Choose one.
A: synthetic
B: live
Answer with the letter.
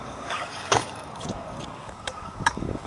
A